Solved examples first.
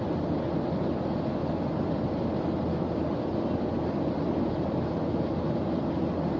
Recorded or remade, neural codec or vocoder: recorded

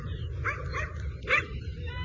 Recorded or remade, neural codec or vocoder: recorded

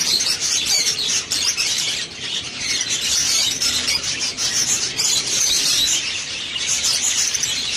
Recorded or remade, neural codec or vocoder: remade, vocoder, BigVGAN v2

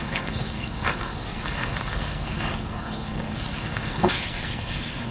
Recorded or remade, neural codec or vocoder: remade, codec, SNAC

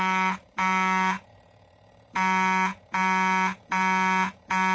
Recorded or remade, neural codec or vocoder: remade, vocoder, Vocos